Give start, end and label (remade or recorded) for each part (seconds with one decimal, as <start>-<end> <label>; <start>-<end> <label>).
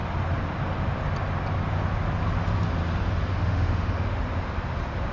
0.0-3.3 recorded; 3.3-4.2 remade; 4.2-5.1 recorded